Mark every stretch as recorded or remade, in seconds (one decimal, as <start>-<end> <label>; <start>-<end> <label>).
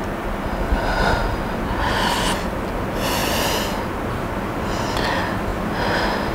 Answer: 0.0-6.3 recorded